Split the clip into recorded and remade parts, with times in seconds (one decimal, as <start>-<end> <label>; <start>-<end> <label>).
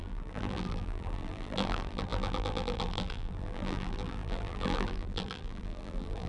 0.0-6.3 remade